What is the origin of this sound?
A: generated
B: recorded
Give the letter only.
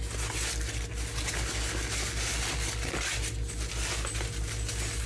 B